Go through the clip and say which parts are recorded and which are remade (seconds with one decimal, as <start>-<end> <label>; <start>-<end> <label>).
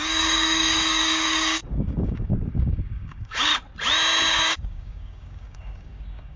0.0-3.5 remade; 3.5-4.3 recorded; 4.3-6.4 remade